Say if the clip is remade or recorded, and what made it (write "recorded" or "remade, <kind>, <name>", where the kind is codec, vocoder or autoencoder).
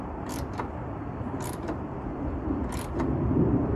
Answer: remade, vocoder, BigVGAN v2